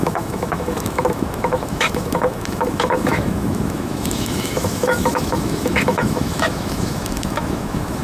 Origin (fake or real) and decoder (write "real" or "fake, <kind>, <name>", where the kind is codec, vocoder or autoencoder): fake, autoencoder, DAC-VAE